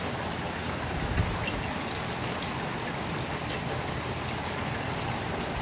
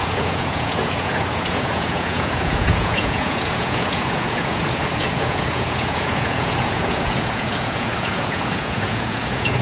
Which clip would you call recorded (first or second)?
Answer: first